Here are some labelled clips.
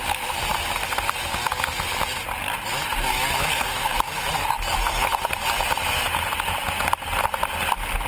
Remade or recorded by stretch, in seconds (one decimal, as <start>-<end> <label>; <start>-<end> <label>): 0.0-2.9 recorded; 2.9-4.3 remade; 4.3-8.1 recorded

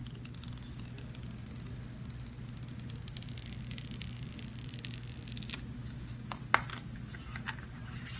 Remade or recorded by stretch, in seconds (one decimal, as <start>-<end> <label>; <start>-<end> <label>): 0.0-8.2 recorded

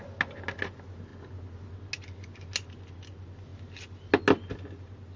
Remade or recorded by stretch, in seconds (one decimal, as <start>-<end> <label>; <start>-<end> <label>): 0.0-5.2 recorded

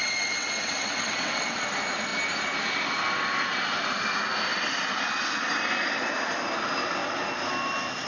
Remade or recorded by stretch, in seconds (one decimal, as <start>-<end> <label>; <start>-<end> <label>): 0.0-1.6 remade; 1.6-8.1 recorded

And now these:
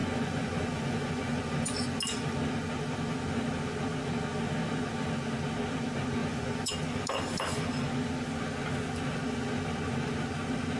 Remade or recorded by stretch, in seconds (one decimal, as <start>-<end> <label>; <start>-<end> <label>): 0.0-2.0 remade; 2.0-6.2 recorded; 6.2-6.7 remade; 6.7-10.8 recorded

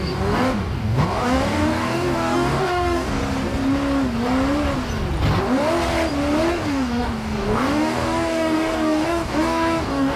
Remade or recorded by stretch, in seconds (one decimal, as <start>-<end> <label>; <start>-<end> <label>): 0.0-3.2 remade; 3.2-6.5 recorded; 6.5-10.2 remade

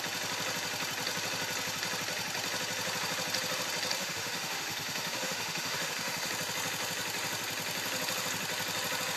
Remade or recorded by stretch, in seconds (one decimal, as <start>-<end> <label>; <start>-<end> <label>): 0.0-4.0 recorded; 4.0-6.3 remade; 6.3-9.2 recorded